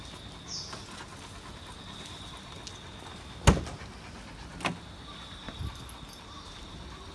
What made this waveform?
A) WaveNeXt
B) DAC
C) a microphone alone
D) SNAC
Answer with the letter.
C